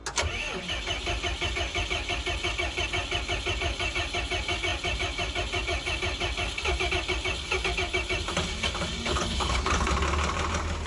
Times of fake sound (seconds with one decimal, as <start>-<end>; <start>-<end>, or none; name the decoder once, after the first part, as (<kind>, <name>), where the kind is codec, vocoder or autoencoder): 9.1-9.9 (codec, HILCodec)